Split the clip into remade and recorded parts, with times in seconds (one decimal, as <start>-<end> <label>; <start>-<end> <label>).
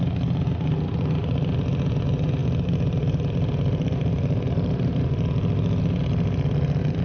0.0-7.0 recorded